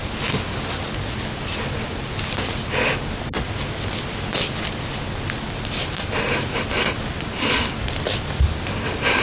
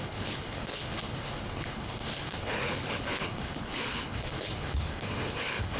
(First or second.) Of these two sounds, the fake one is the second